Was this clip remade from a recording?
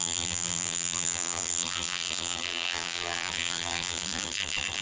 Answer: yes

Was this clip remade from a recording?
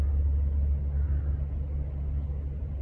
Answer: no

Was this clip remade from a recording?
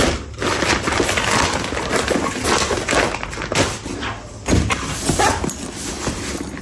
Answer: no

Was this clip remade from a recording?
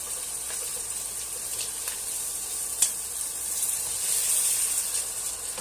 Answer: yes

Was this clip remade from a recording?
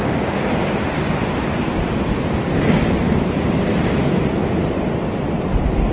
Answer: no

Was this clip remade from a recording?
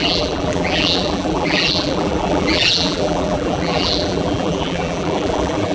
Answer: yes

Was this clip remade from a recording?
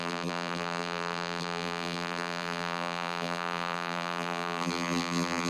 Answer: yes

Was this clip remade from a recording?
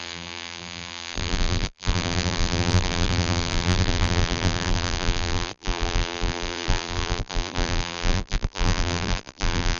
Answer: yes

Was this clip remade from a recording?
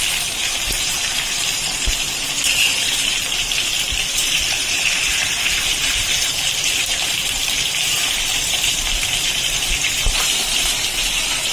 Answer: yes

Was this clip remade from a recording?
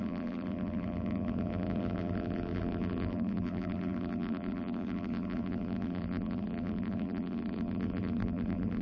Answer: yes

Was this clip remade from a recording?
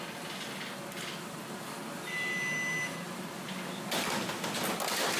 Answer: no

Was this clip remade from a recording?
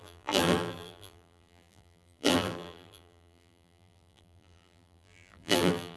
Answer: yes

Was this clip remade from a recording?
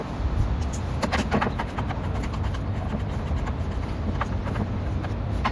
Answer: no